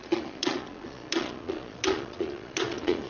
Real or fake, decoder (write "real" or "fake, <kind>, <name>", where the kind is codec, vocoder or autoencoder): fake, vocoder, Vocos